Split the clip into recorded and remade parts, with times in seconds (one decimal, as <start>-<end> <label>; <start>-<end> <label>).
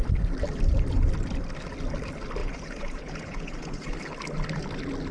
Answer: 0.0-2.4 recorded; 2.4-3.9 remade; 3.9-5.1 recorded